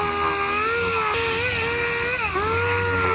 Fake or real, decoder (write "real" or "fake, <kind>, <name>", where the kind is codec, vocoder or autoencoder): real